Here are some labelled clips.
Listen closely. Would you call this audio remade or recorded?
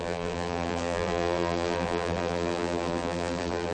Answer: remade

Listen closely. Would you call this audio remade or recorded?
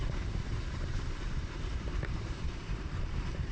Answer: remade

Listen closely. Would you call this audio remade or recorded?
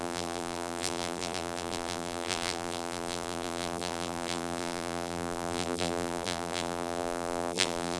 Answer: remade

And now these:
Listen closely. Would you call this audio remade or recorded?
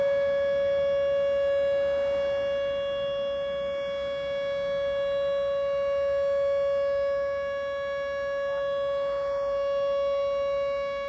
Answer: recorded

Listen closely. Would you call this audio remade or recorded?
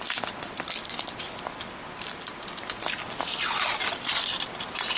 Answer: remade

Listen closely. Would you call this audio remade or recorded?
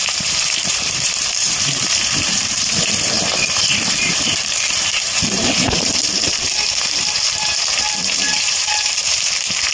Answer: remade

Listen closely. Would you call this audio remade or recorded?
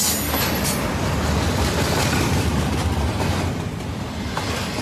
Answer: recorded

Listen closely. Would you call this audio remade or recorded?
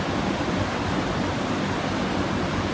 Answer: recorded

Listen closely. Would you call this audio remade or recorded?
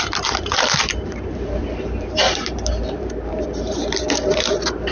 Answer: remade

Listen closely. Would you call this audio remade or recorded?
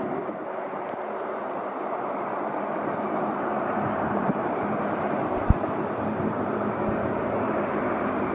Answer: remade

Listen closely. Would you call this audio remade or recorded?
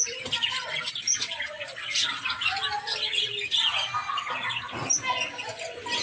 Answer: recorded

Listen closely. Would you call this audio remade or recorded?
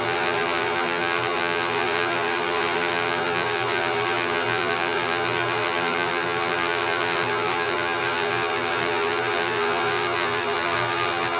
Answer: remade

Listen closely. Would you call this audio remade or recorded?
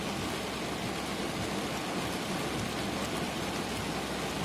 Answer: recorded